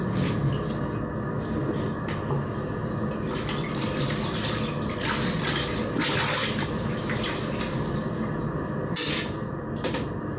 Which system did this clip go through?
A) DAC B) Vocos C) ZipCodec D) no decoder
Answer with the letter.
D